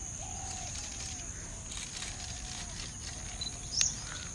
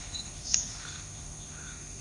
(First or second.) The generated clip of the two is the second